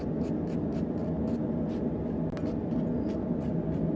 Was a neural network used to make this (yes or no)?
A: no